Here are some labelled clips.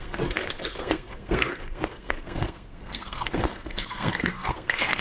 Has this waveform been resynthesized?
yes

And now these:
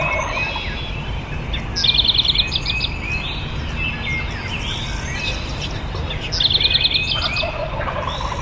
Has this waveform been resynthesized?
no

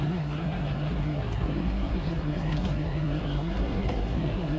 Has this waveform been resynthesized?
yes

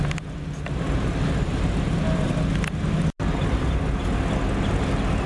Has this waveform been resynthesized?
no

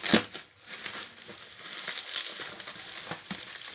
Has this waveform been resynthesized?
no